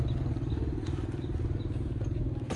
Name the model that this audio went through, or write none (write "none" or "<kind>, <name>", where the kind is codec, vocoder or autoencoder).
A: none